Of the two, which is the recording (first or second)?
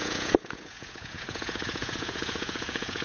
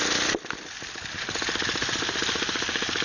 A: second